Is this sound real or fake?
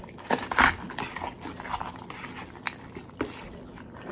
real